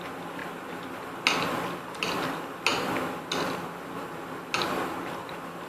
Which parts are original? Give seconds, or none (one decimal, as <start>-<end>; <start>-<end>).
0.0-5.7